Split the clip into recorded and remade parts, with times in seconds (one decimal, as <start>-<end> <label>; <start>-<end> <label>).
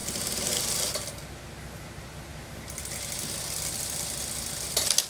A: 0.0-2.3 recorded; 2.3-2.8 remade; 2.8-5.1 recorded